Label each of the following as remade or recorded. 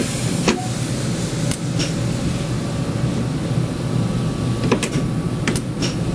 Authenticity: recorded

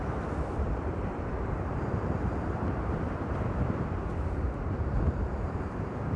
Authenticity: remade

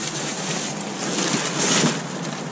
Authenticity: recorded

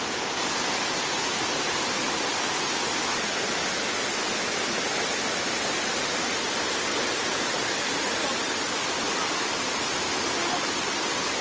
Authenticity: recorded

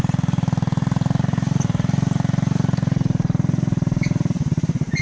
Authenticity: remade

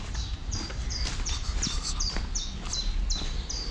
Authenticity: remade